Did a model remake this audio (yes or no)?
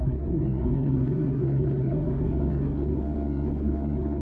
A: yes